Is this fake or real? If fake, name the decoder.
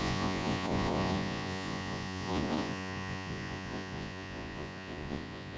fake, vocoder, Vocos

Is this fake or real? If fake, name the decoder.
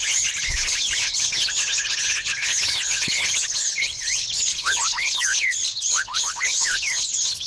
fake, codec, HILCodec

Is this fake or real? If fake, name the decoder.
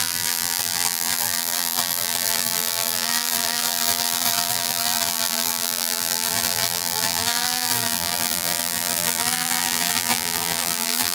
fake, vocoder, BigVGAN v2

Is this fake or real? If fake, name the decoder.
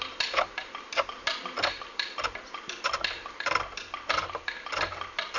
fake, vocoder, BigVGAN v2